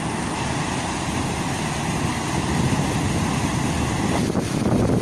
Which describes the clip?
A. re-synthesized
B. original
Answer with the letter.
B